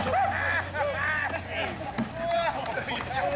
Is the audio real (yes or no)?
yes